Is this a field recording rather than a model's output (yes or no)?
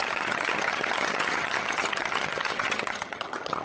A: no